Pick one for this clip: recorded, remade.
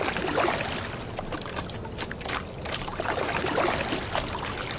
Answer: recorded